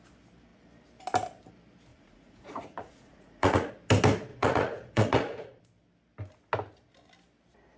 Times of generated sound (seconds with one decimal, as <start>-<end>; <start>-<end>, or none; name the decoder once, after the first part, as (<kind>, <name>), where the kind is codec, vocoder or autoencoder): 1.9-3.7 (vocoder, Vocos); 4.3-5.6